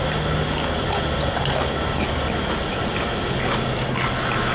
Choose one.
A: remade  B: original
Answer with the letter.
B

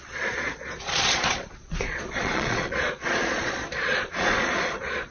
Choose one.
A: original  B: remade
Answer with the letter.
B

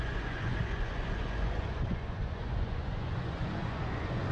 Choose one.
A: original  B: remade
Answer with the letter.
B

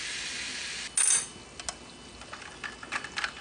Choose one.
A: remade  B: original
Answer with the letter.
B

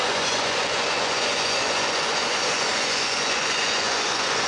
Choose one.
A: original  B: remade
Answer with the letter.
B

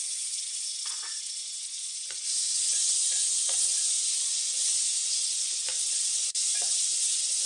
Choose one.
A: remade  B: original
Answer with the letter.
A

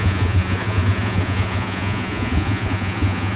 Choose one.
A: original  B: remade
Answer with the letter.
B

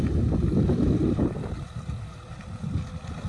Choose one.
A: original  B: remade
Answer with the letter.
A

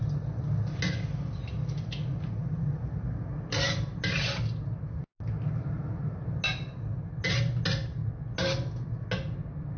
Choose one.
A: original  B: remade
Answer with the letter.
A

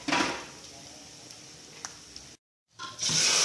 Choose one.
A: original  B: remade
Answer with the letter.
A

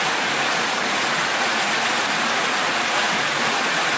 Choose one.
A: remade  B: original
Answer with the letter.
A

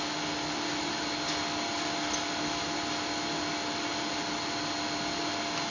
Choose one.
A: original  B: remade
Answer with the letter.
A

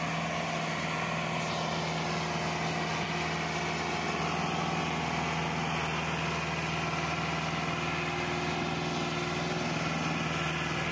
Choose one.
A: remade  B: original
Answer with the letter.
B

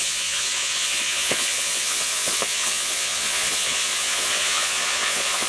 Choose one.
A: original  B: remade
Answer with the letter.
B